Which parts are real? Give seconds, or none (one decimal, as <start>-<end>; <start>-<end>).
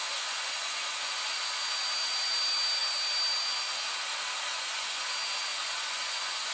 1.5-4.5; 5.1-5.5